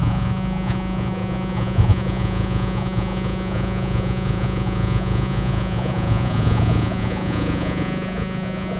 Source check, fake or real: fake